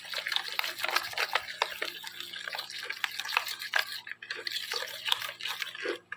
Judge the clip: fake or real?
real